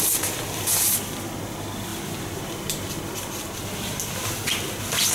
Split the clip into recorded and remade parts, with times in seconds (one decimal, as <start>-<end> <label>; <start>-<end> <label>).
0.0-5.1 recorded

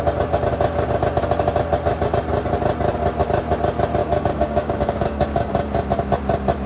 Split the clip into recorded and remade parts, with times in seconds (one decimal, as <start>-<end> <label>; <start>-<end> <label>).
0.0-4.0 recorded; 4.0-5.5 remade; 5.5-6.7 recorded

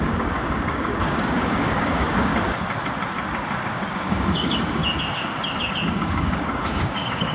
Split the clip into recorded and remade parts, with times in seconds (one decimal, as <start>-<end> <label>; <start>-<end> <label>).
0.0-2.3 remade; 2.3-3.9 recorded; 3.9-4.8 remade; 4.8-5.9 recorded; 5.9-7.3 remade